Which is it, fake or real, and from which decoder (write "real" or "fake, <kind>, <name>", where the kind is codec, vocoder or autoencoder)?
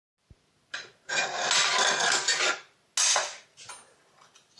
real